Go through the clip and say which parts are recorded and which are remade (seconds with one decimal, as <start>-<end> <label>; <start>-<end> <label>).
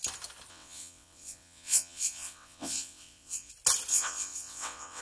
0.0-0.5 recorded; 0.5-3.5 remade; 3.5-3.9 recorded; 3.9-5.0 remade